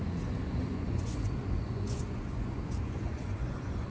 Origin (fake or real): fake